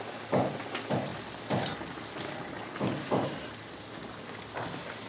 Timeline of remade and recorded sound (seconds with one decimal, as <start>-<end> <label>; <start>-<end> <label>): 0.0-5.1 recorded